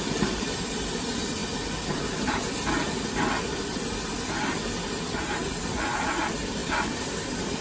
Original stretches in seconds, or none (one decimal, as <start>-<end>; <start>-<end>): 1.4-5.3